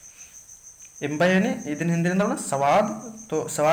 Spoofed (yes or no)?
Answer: no